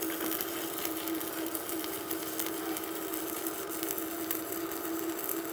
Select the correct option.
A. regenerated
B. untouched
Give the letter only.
B